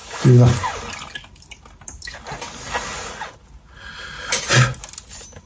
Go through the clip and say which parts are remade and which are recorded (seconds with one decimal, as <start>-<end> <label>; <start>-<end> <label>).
0.0-5.5 recorded